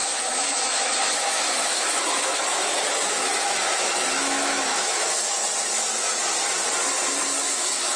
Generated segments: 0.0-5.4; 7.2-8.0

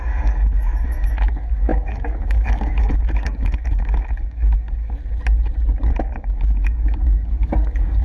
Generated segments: 0.0-5.0; 5.9-8.0

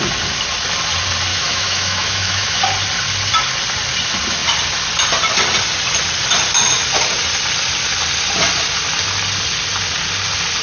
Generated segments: 1.3-2.6

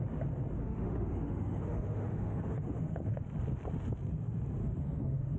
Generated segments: 0.6-3.2; 4.6-5.4

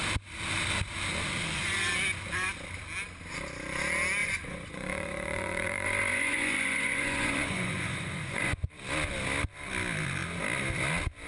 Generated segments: 4.2-8.7

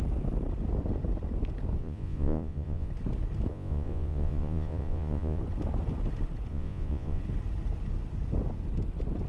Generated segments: 1.8-2.9; 3.5-5.4; 6.5-7.2

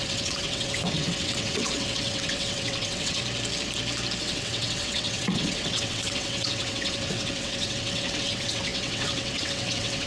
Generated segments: 0.0-3.2; 4.2-10.1